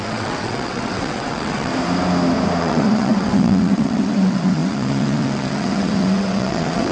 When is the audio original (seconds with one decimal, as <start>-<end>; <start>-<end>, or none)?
1.7-2.6